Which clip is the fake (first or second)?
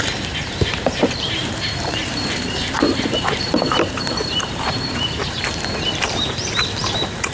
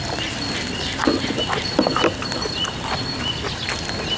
first